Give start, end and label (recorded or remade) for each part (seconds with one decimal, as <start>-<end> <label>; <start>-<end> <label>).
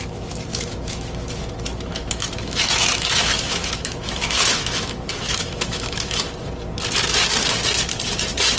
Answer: 0.0-0.5 recorded; 0.5-1.3 remade; 1.3-1.9 recorded; 1.9-6.2 remade; 6.2-8.6 recorded